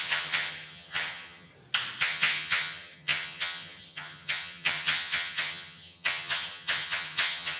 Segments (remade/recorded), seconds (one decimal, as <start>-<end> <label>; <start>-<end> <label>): 0.0-1.5 remade; 1.5-2.0 recorded; 2.0-7.6 remade